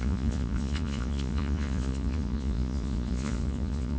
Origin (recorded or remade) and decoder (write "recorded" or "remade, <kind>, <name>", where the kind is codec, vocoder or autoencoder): remade, vocoder, Vocos